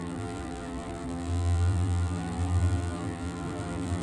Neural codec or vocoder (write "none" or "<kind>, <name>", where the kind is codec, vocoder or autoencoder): vocoder, BigVGAN v2